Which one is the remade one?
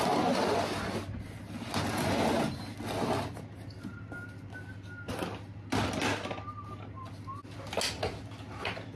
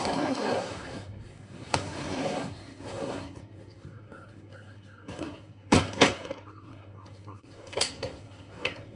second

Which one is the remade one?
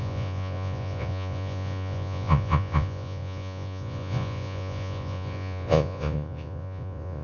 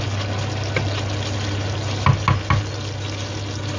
first